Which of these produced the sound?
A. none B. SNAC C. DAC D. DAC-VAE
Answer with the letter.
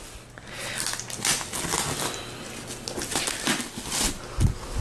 A